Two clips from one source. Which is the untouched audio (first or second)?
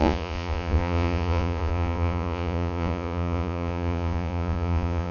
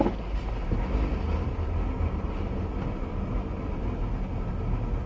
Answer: second